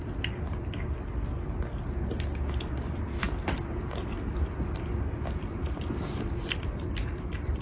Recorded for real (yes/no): yes